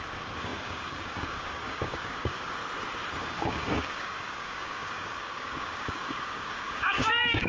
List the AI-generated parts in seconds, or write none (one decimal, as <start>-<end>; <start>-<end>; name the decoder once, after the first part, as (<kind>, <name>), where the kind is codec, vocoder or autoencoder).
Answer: 0.0-2.6 (codec, DAC); 3.2-7.5